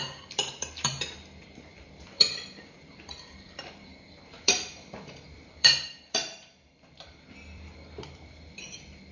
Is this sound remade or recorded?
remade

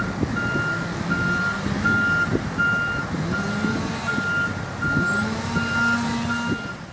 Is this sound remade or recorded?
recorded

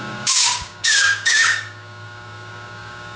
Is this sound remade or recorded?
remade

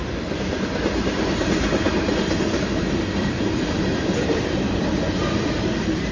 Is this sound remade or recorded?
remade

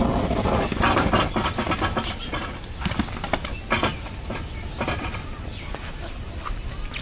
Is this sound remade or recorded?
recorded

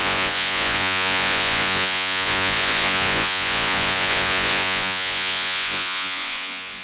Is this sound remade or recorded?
remade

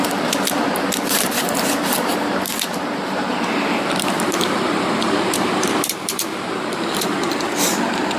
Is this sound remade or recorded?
remade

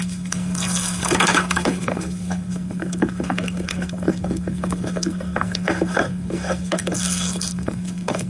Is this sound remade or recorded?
remade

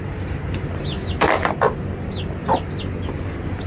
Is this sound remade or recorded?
recorded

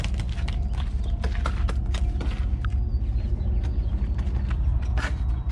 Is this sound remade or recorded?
recorded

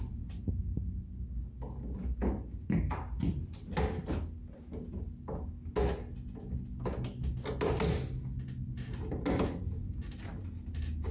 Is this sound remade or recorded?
recorded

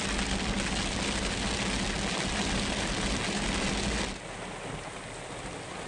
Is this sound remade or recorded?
recorded